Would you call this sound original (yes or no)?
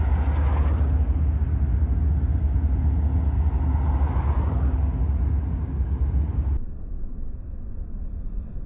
yes